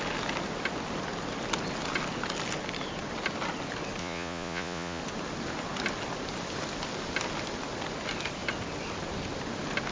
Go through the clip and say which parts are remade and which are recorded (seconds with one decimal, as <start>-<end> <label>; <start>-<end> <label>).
0.0-4.0 recorded; 4.0-5.0 remade; 5.0-9.9 recorded